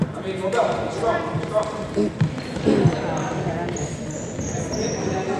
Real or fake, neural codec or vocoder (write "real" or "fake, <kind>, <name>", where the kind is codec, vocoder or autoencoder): real